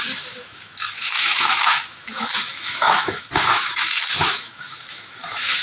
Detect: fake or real fake